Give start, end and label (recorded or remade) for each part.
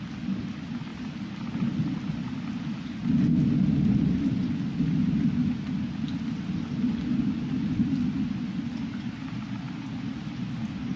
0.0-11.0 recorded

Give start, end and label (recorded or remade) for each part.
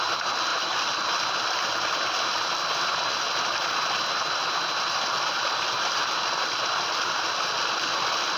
0.0-8.4 recorded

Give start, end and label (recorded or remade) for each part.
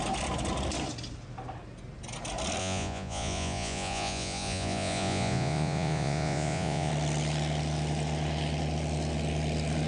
0.0-2.6 recorded; 2.6-6.9 remade; 6.9-9.9 recorded